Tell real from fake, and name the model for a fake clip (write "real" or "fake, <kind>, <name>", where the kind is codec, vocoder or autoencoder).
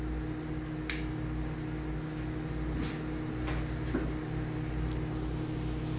real